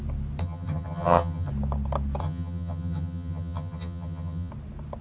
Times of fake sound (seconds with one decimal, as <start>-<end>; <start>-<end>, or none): 0.4-1.5; 2.2-4.5